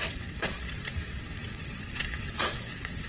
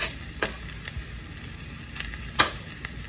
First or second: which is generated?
first